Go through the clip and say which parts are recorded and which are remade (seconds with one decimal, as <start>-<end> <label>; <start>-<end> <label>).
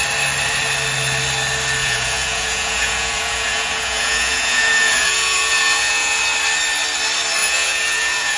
0.0-1.8 recorded; 1.8-6.2 remade; 6.2-7.4 recorded; 7.4-8.4 remade